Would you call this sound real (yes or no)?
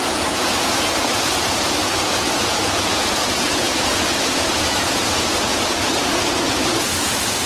no